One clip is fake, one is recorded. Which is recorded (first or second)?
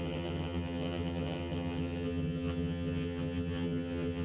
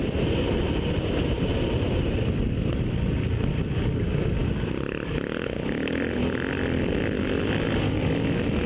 second